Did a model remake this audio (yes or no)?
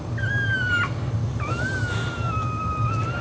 no